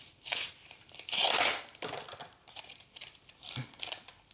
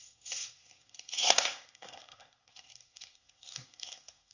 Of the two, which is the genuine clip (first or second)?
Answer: first